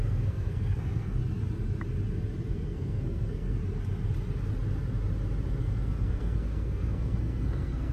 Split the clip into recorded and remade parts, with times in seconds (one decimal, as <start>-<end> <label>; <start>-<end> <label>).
0.0-1.2 remade; 1.2-2.5 recorded; 2.5-3.6 remade; 3.6-5.6 recorded; 5.6-7.9 remade